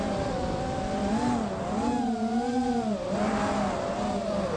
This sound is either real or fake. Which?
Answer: real